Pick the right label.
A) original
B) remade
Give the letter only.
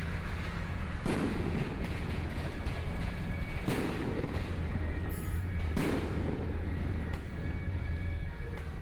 B